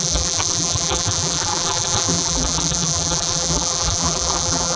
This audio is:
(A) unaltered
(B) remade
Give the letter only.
B